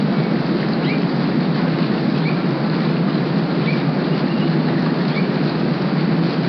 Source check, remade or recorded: recorded